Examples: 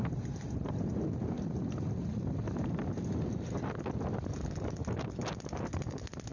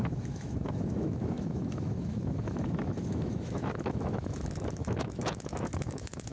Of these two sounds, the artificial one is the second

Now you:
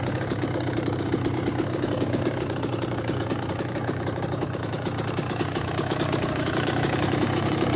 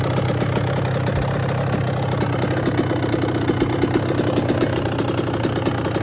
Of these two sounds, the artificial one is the first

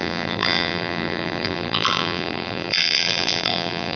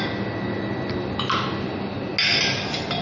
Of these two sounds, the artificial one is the first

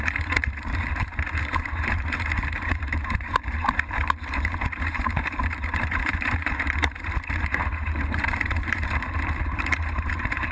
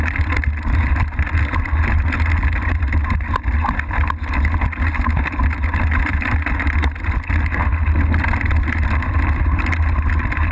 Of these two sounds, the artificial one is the first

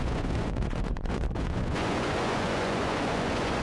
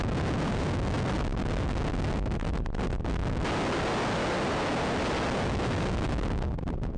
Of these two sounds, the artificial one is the first